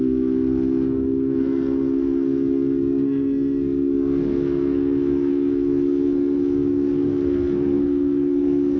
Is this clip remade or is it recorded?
remade